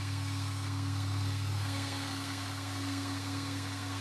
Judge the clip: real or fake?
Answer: fake